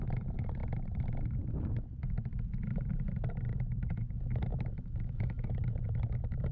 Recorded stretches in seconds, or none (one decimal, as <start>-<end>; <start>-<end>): 0.0-3.5; 5.6-6.5